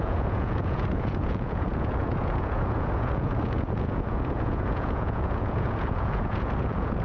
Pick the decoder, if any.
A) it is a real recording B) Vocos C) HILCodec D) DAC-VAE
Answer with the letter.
B